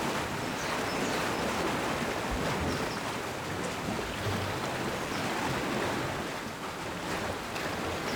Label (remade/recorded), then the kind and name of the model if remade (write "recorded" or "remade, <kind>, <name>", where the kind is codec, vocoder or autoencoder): recorded